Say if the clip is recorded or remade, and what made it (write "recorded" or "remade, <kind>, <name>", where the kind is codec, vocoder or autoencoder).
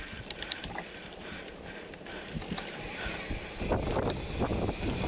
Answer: remade, vocoder, BigVGAN v2